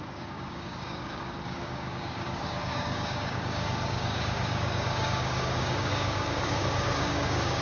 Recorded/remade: remade